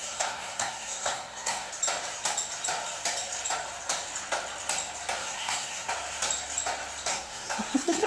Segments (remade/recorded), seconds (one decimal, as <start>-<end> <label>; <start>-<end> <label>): 0.0-1.7 remade; 1.7-5.2 recorded; 5.2-5.9 remade; 5.9-7.1 recorded; 7.1-8.1 remade